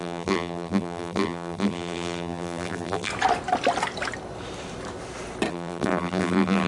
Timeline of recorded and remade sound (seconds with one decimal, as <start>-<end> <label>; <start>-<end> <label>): 0.0-3.1 remade; 3.1-5.5 recorded; 5.5-6.7 remade